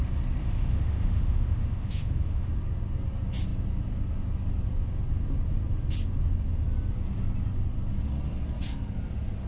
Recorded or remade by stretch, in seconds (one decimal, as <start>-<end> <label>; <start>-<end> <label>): 0.0-0.4 recorded; 0.4-2.5 remade; 2.5-9.5 recorded

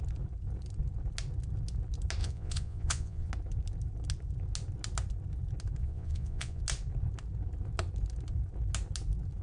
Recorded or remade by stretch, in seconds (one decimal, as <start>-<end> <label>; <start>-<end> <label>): 0.0-2.2 recorded; 2.2-3.3 remade; 3.3-5.8 recorded; 5.8-6.6 remade; 6.6-9.4 recorded

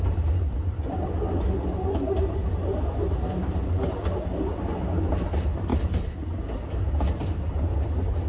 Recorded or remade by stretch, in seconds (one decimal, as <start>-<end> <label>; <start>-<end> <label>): 0.0-8.3 recorded

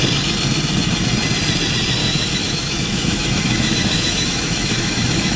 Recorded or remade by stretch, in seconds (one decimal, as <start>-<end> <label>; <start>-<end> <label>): 0.0-2.0 recorded; 2.0-5.4 remade

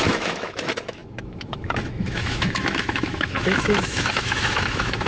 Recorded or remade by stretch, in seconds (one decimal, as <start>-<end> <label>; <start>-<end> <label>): 0.0-5.1 remade